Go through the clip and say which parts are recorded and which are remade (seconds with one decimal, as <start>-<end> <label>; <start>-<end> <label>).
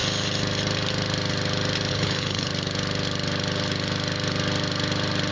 0.0-1.9 recorded; 1.9-2.5 remade; 2.5-5.3 recorded